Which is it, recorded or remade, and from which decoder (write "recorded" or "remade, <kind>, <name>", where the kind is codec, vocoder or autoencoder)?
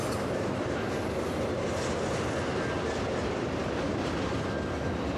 recorded